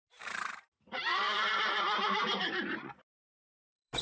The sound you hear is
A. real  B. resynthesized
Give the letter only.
B